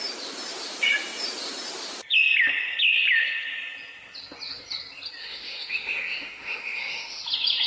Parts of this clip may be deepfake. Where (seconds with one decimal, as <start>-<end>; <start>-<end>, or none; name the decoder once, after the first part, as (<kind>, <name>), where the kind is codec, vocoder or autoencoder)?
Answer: 5.2-7.2 (autoencoder, DAC-VAE)